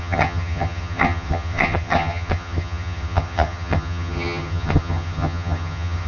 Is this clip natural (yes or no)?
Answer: no